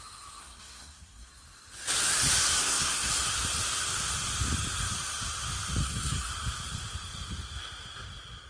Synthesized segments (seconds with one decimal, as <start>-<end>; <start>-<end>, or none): 0.4-1.3; 2.6-3.1; 5.8-6.3